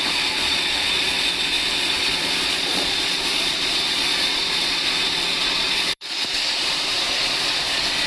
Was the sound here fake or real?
fake